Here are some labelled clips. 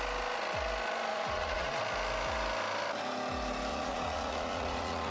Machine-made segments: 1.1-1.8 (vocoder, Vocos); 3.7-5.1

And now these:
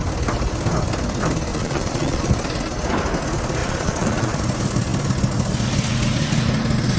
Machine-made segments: 1.5-2.3 (vocoder, Vocos); 3.6-4.4

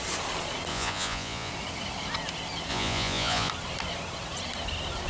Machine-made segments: 0.7-1.5 (vocoder, Vocos); 2.7-3.5

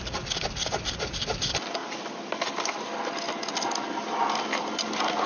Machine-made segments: none

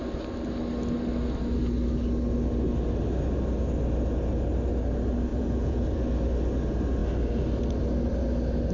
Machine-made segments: 5.3-5.8 (vocoder, Vocos)

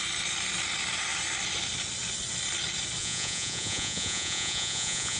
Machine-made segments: 3.0-5.2 (vocoder, Vocos)

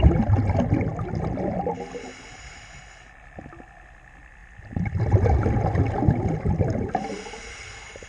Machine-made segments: none